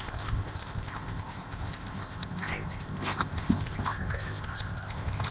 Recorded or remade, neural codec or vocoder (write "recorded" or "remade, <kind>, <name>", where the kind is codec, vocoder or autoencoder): remade, codec, ZipCodec